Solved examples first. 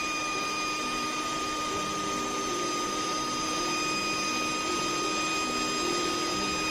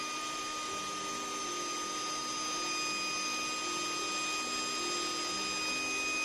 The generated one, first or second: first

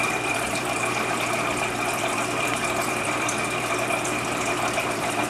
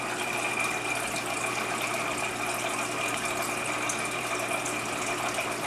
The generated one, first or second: first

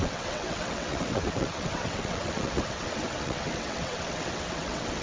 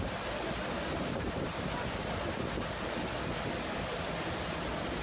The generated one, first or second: first